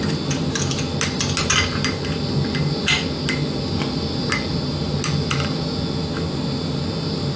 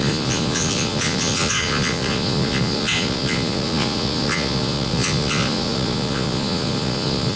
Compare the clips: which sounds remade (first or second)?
second